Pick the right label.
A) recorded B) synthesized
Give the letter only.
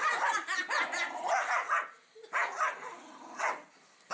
A